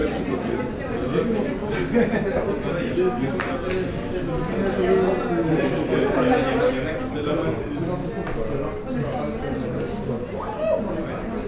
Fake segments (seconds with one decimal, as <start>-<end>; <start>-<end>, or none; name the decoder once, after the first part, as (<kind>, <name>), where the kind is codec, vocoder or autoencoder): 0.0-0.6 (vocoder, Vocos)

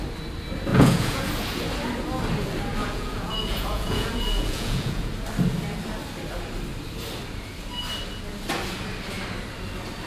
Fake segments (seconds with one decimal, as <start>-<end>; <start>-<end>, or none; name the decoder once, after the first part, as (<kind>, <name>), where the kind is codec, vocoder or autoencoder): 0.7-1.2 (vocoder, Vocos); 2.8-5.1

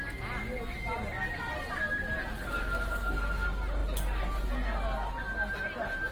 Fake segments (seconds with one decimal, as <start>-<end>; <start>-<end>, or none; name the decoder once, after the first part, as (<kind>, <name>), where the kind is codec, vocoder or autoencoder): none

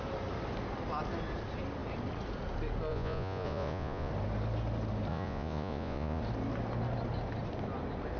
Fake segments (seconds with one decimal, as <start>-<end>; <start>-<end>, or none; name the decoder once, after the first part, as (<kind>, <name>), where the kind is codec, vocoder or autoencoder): 2.9-4.1 (vocoder, Vocos); 5.1-6.2

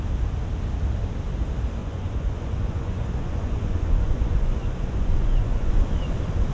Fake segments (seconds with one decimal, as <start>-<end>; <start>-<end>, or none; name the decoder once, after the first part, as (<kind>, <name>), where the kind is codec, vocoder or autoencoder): 1.8-5.7 (vocoder, Vocos)

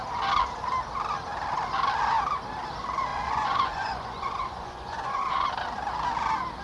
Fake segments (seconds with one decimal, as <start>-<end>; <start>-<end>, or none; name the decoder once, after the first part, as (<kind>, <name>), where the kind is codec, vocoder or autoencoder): 3.1-5.5 (vocoder, Vocos)

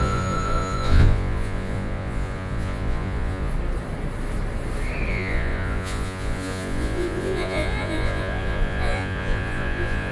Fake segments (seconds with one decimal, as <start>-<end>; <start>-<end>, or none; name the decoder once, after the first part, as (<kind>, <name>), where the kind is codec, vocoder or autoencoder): 0.0-3.5 (vocoder, Vocos); 5.1-10.1